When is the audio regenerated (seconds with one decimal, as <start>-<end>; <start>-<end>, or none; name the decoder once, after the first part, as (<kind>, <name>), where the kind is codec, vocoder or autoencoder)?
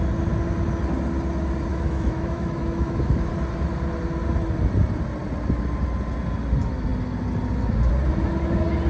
1.7-3.3 (autoencoder, DAC-VAE)